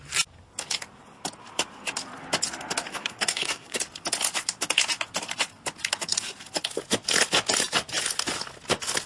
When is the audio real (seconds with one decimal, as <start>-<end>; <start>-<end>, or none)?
0.0-2.9; 3.8-9.1